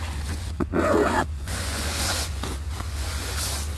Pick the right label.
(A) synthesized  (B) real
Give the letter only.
A